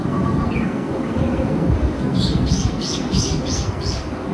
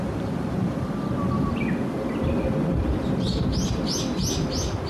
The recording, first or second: second